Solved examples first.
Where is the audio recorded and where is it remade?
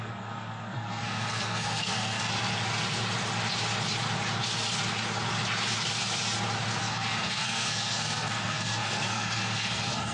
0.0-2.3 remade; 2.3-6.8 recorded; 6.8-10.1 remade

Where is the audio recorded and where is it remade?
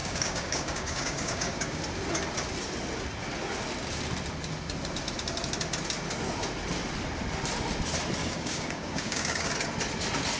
0.0-1.8 remade; 1.8-8.2 recorded; 8.2-9.5 remade; 9.5-10.4 recorded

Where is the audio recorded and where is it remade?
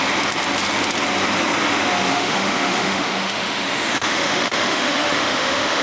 0.0-2.1 recorded; 2.1-5.8 remade